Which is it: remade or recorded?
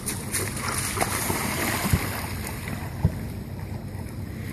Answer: recorded